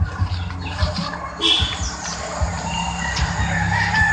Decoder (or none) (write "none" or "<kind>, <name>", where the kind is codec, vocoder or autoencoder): none